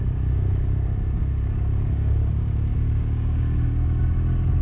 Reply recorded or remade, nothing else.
remade